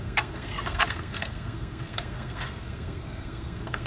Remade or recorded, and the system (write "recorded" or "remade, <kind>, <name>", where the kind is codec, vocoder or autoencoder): remade, codec, SNAC